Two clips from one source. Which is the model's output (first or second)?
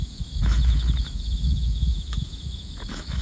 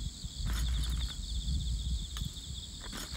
first